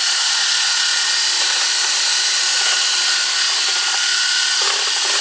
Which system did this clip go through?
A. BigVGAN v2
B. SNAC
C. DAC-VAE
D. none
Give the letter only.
D